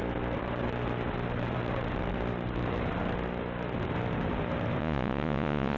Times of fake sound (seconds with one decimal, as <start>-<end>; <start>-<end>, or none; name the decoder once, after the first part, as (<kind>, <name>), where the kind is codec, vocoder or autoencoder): 4.8-5.8 (vocoder, Vocos)